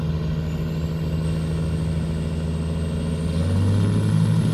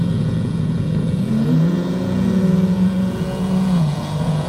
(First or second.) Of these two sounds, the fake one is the second